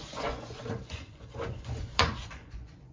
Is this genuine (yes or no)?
no